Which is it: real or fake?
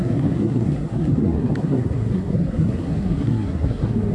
fake